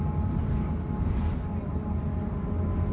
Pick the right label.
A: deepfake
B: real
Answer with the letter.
B